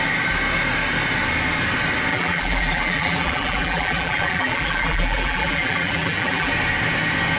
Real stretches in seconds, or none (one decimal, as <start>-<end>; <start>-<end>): 0.0-2.1; 6.5-7.4